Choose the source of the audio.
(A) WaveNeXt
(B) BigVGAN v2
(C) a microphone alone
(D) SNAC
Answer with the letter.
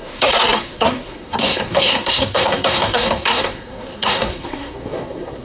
D